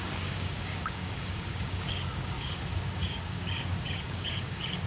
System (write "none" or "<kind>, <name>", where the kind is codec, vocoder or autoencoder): codec, DAC